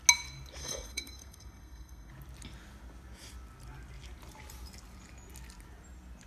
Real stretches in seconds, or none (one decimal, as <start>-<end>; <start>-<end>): 0.0-0.6; 2.1-6.3